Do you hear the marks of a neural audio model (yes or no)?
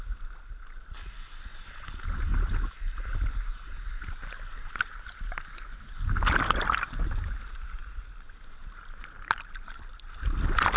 no